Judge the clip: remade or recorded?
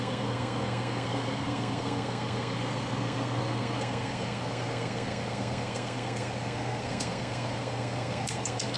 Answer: remade